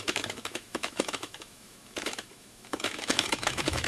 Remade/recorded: remade